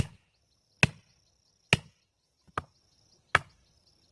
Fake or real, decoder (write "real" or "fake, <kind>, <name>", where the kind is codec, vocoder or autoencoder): real